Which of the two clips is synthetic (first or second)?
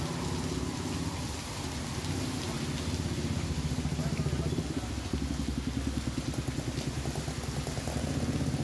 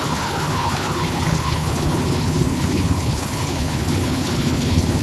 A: second